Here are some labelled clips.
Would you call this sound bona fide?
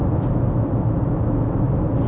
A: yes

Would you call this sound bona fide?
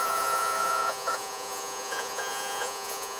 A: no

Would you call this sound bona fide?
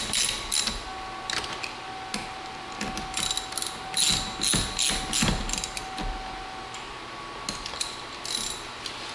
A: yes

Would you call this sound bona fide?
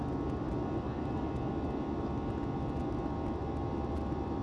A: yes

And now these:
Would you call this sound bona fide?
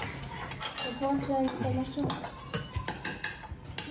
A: yes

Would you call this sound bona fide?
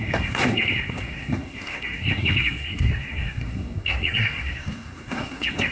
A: no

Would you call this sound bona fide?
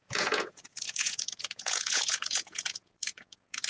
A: no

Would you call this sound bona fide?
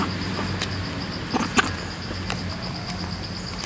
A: yes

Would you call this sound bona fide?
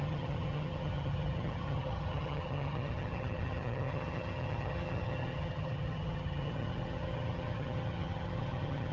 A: no